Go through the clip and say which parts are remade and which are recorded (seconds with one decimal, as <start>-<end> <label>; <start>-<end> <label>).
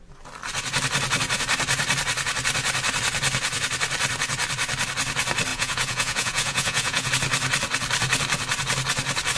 0.0-5.5 recorded; 5.5-7.1 remade; 7.1-9.4 recorded